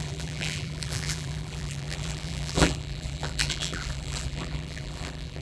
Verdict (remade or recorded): remade